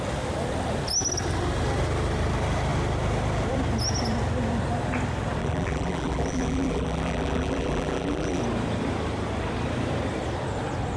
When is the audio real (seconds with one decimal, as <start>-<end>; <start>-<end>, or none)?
0.0-5.4; 8.4-11.0